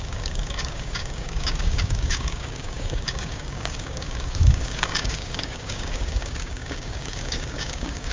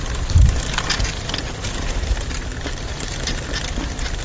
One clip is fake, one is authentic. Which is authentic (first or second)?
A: second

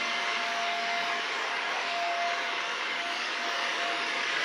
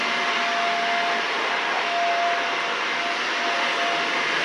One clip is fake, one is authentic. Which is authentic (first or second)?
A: second